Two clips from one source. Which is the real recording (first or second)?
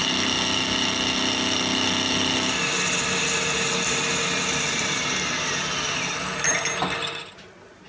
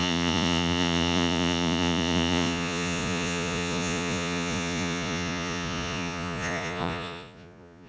first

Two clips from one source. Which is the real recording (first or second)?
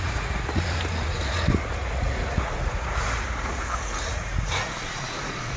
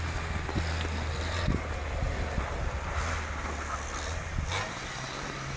second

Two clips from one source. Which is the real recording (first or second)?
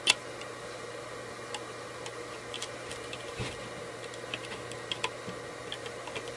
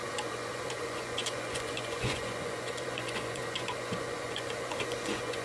first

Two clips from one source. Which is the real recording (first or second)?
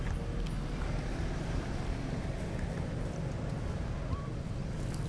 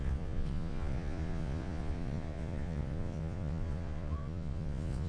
first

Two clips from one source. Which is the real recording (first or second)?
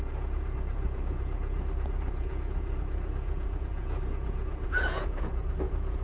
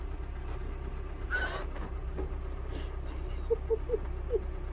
second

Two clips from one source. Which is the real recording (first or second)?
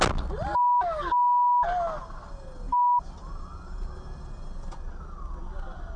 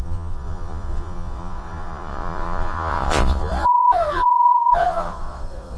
first